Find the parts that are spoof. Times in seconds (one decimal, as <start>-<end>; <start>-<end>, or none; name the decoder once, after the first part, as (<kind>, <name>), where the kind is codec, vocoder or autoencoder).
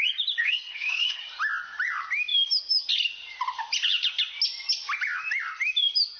0.4-1.2 (codec, HILCodec)